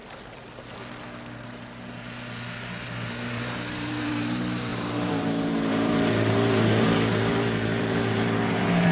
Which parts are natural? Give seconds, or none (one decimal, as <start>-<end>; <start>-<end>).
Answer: 0.0-3.1